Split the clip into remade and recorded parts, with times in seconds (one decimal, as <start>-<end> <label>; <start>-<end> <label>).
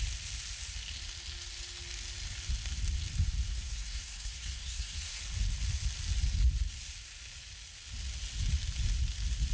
0.0-3.5 recorded; 3.5-5.2 remade; 5.2-9.5 recorded